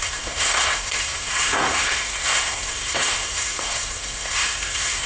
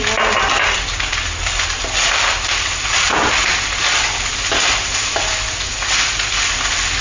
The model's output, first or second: first